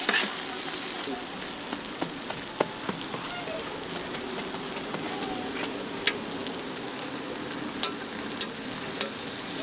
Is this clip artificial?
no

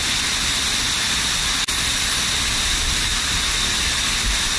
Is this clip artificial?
no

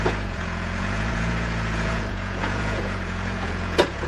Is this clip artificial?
yes